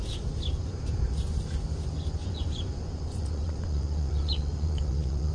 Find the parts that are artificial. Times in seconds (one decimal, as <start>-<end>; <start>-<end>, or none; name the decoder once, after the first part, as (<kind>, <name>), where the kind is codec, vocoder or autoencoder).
2.2-5.3 (vocoder, Vocos)